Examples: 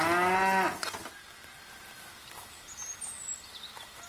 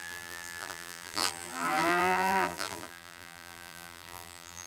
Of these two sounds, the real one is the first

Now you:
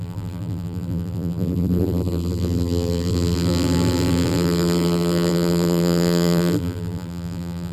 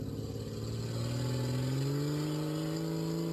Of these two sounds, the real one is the second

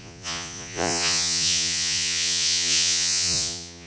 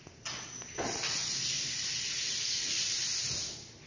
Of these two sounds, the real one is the second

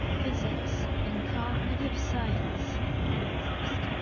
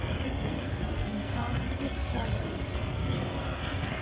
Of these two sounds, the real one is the first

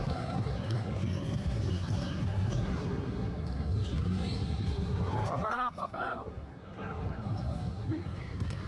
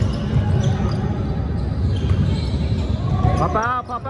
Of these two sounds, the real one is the second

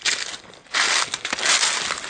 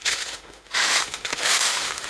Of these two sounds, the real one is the first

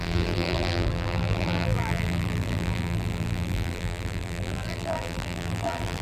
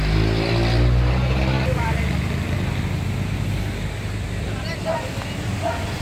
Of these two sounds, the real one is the second